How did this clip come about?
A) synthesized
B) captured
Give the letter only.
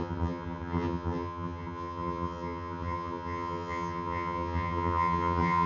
A